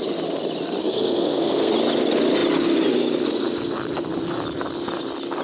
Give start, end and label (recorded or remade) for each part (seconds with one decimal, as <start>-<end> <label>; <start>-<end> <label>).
0.0-0.8 recorded; 0.8-1.7 remade; 1.7-5.4 recorded